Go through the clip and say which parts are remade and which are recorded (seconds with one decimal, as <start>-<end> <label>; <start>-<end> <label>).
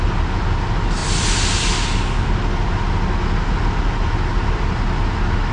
0.0-5.5 recorded